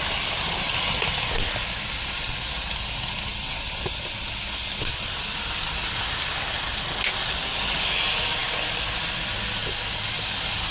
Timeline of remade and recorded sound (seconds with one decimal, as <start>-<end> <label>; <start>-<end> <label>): 0.0-10.7 recorded